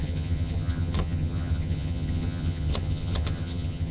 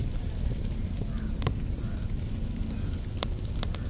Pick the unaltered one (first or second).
second